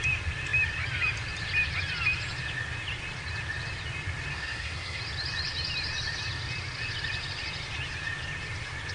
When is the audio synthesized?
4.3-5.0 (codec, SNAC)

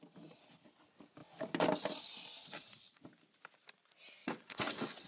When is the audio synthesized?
2.4-3.0 (vocoder, WaveNeXt); 4.2-5.1